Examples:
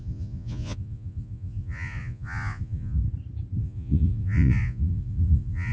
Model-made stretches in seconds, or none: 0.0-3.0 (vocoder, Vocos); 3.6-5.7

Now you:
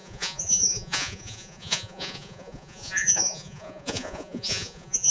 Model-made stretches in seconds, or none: 0.0-5.1 (vocoder, Vocos)

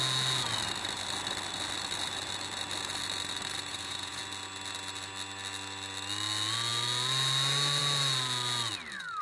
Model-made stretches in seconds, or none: 3.7-4.2 (vocoder, Vocos)